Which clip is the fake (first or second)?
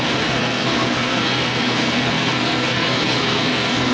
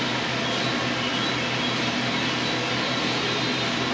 first